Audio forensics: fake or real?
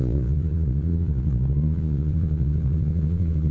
fake